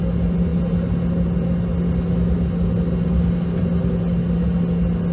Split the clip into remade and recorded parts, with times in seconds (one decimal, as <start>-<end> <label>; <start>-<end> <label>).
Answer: 0.0-5.1 recorded